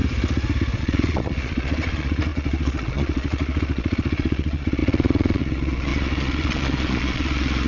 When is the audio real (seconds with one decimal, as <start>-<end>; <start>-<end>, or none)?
0.0-0.8